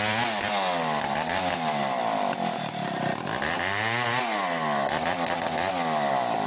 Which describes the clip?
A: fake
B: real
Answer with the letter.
B